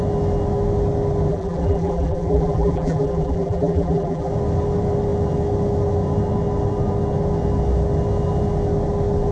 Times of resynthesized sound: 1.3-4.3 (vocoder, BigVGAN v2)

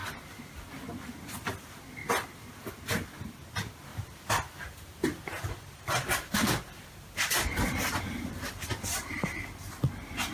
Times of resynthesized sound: 3.9-8.5 (vocoder, BigVGAN v2)